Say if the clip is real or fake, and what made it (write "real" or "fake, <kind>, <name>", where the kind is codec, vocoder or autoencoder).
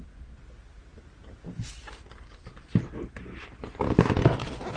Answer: real